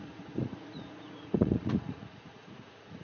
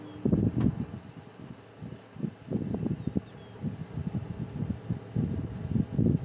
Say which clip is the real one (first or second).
second